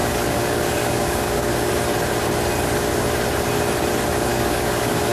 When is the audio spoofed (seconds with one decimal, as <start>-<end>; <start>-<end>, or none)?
0.0-1.7; 4.3-5.1